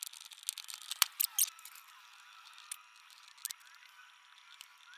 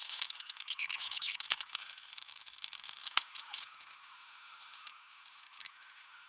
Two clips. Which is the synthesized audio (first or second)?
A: second